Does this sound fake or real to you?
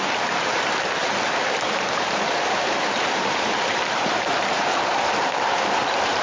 fake